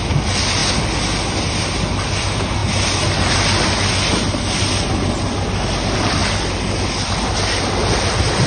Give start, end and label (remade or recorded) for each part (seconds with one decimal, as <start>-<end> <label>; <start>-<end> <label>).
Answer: 0.0-8.5 recorded